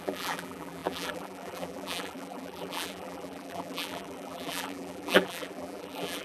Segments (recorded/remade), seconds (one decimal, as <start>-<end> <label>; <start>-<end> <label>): 0.0-6.2 remade